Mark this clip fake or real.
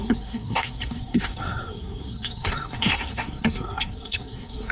fake